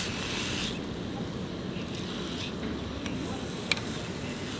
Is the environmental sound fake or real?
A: real